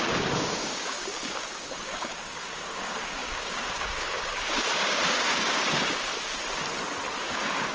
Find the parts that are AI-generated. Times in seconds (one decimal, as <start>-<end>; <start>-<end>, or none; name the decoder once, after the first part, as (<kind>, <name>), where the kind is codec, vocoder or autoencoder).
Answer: 0.0-6.1 (codec, DAC); 7.2-7.7